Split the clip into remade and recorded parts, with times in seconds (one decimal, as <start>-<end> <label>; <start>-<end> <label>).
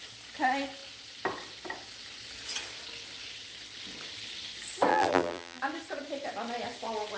0.0-4.9 recorded; 4.9-5.6 remade; 5.6-7.2 recorded